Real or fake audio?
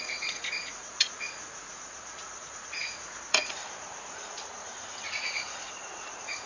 fake